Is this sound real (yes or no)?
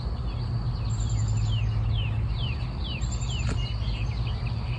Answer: yes